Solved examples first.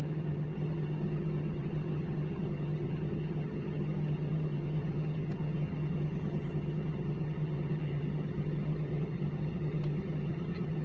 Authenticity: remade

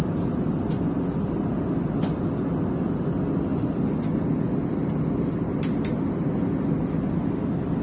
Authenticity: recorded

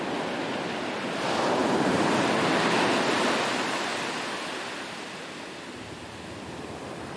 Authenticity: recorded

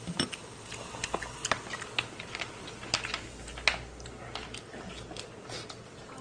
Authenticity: recorded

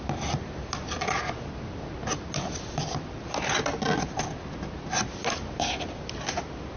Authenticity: recorded